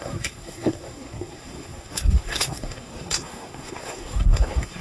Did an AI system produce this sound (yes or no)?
yes